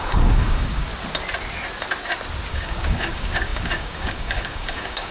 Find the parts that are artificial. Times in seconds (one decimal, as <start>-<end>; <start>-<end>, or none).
0.0-0.9; 2.5-5.1